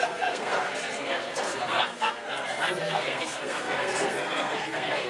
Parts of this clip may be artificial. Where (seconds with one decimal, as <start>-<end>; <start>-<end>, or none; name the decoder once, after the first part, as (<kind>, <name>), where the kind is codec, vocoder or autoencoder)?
0.0-5.1 (codec, SNAC)